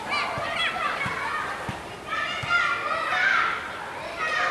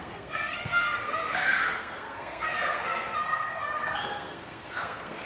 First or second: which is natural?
first